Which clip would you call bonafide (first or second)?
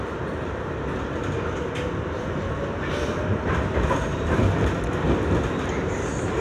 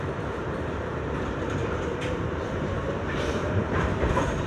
first